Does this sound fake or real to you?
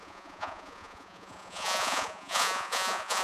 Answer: fake